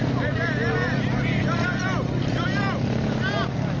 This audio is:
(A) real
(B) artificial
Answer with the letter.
A